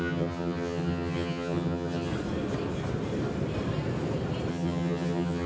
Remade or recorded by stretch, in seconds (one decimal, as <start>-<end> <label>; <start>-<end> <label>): 0.0-2.1 remade; 2.1-4.5 recorded; 4.5-5.5 remade